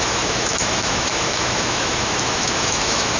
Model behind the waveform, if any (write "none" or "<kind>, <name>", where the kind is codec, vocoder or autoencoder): autoencoder, DAC-VAE